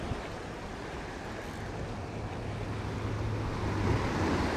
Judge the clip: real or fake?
real